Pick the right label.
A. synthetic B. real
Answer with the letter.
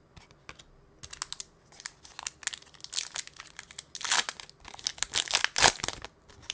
B